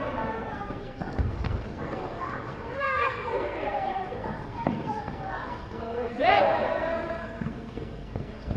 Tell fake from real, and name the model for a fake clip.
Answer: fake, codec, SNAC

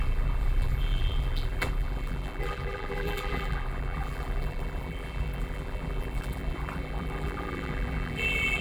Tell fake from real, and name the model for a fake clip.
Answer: fake, vocoder, BigVGAN v2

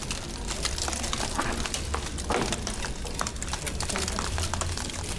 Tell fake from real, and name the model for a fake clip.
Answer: real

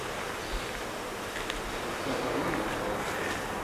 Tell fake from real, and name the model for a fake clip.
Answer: real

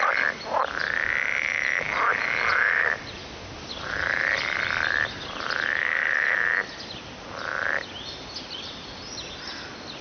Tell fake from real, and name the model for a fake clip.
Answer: real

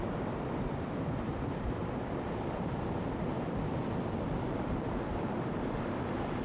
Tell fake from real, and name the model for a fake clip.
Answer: real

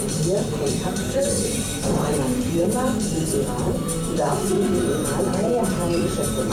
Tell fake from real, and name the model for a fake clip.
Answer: fake, vocoder, BigVGAN v2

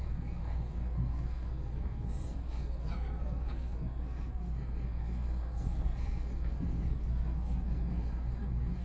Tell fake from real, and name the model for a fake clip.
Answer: fake, codec, SNAC